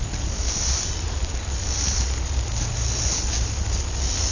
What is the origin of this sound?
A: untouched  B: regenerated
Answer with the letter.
A